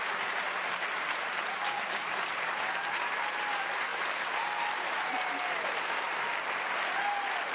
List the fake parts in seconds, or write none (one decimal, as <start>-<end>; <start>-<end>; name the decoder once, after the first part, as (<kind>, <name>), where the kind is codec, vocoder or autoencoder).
none